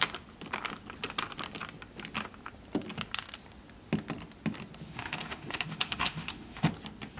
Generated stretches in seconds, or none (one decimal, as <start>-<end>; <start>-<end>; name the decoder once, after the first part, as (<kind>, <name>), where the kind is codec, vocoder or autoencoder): 4.9-6.7 (autoencoder, DAC-VAE)